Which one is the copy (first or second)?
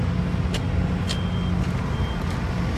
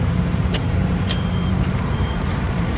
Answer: second